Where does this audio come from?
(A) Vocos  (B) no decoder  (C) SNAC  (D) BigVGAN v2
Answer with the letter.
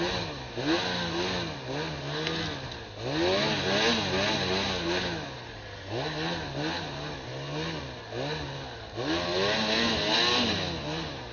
B